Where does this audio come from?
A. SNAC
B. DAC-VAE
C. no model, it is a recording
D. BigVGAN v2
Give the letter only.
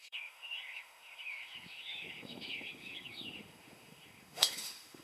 B